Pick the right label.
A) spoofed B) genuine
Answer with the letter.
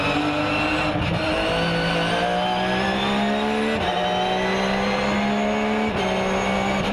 B